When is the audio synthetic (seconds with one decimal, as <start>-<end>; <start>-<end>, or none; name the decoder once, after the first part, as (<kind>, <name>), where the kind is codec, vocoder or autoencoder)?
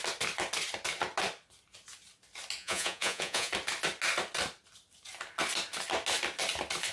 2.6-3.5 (vocoder, Vocos)